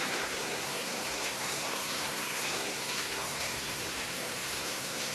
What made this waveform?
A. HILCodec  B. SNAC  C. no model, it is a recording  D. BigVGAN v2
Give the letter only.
B